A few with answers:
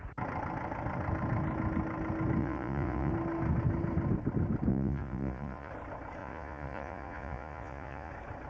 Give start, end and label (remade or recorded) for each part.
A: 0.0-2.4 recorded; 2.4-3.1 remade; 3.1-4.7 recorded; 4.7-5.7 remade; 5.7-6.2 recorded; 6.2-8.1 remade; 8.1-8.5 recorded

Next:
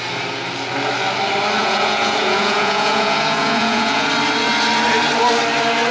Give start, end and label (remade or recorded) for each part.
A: 0.0-1.6 recorded; 1.6-4.1 remade; 4.1-5.9 recorded